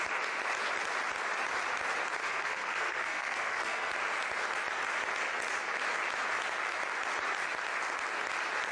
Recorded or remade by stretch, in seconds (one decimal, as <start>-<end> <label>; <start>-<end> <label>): 0.0-2.2 recorded; 2.2-3.9 remade; 3.9-8.7 recorded